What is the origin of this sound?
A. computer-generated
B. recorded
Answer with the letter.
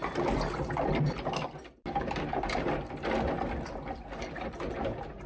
B